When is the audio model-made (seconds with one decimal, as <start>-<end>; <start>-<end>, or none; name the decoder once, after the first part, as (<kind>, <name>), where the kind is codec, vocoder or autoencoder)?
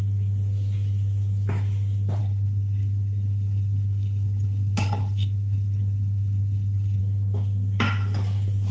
2.2-7.0 (codec, HILCodec)